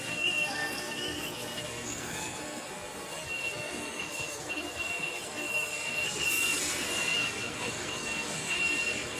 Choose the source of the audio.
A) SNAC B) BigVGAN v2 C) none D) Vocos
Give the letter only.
A